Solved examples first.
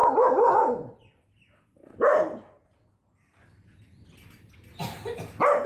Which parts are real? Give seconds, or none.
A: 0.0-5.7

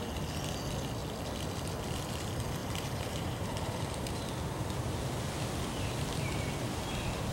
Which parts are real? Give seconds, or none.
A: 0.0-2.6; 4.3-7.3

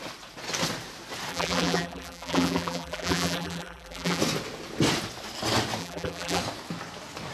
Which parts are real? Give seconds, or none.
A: 0.0-1.3; 4.2-5.8; 6.4-7.3